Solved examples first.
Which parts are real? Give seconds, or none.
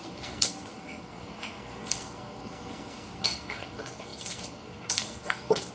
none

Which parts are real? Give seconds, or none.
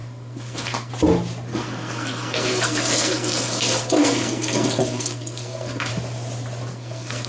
0.9-1.5; 5.9-6.7